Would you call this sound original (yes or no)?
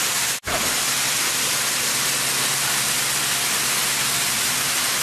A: yes